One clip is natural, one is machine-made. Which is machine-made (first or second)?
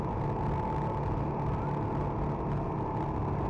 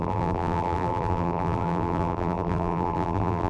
second